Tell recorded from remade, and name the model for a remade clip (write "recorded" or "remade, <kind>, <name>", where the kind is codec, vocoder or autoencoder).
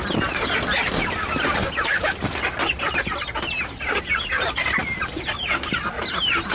recorded